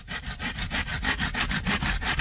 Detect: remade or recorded recorded